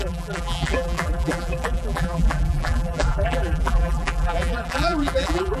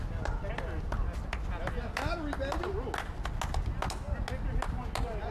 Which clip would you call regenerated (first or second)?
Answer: first